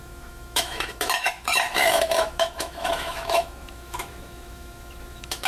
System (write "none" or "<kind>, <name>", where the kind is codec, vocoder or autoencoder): autoencoder, DAC-VAE